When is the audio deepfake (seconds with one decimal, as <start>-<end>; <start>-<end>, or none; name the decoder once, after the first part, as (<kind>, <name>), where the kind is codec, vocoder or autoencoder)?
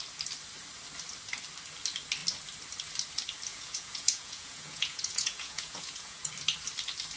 3.5-6.3 (vocoder, Vocos)